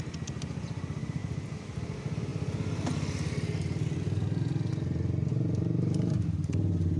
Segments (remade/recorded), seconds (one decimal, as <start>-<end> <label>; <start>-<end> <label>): 0.0-5.3 recorded; 5.3-6.5 remade; 6.5-7.0 recorded